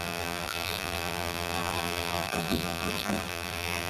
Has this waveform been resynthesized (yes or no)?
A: yes